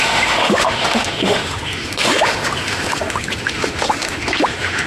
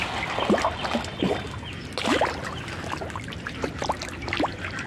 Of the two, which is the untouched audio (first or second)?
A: second